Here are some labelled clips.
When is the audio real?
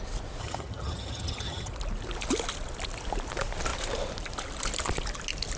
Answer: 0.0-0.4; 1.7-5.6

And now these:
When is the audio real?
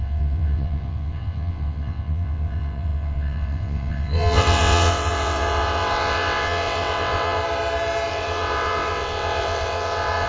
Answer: 7.4-8.1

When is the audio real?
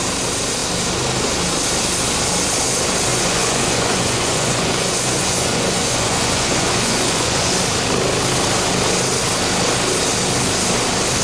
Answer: 0.0-3.1; 7.5-11.2